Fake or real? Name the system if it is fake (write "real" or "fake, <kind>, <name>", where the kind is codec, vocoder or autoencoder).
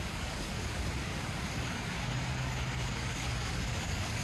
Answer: fake, codec, DAC